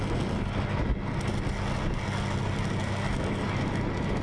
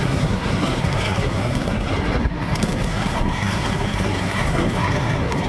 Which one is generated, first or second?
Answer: second